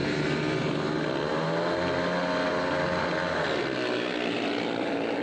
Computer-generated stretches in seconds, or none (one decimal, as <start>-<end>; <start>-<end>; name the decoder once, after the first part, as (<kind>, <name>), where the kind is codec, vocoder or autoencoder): none

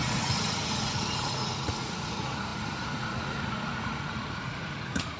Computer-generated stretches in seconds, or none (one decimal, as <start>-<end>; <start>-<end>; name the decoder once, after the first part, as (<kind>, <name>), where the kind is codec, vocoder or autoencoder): 0.0-5.2 (vocoder, Vocos)